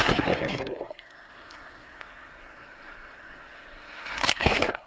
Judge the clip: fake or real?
fake